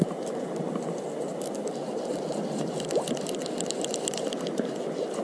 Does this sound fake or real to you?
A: real